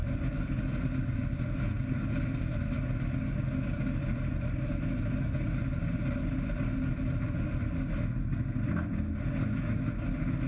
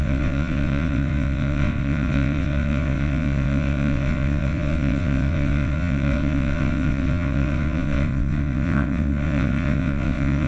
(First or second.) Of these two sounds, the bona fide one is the first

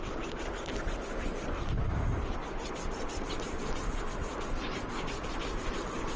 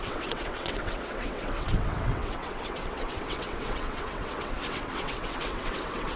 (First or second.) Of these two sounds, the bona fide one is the first